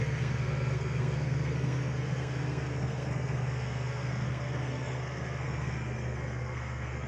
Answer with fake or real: fake